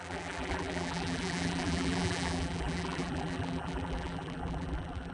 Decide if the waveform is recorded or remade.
remade